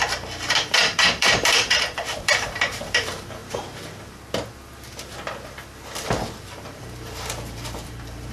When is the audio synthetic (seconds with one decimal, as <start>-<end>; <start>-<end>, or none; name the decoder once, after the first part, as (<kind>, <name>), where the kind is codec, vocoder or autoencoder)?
0.0-3.4 (vocoder, BigVGAN v2); 6.4-8.3

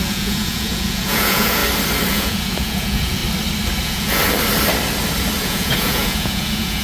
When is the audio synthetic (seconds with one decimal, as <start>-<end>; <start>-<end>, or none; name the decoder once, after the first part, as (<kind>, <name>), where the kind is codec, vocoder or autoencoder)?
0.0-1.6 (vocoder, Vocos); 2.1-3.2; 3.8-4.2; 5.4-6.8

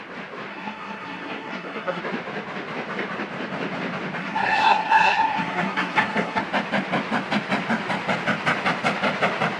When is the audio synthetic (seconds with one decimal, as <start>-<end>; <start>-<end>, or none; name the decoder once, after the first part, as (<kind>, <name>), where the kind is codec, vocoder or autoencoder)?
0.5-2.0 (codec, SNAC); 4.2-6.4

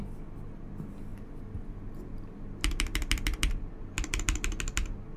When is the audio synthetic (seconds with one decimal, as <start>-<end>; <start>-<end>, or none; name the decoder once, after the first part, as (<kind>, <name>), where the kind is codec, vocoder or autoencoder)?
none

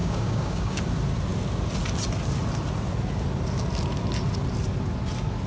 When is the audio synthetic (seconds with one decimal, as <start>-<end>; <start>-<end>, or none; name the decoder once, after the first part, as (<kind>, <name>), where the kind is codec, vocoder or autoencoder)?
0.0-0.8 (codec, DAC)

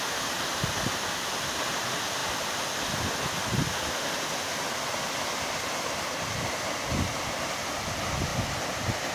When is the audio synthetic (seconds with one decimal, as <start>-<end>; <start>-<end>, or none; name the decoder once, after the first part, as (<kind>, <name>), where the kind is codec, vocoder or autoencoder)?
none